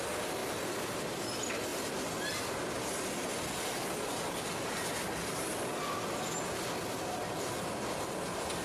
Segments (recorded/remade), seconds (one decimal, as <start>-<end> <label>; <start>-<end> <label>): 0.0-8.6 recorded